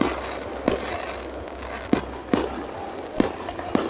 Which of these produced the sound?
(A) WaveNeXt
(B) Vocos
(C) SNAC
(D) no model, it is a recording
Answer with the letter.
D